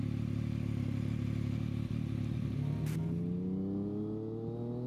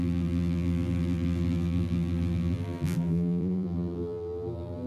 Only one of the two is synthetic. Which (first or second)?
second